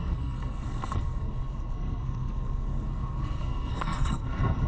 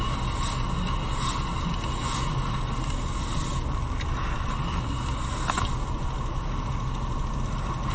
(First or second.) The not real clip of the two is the first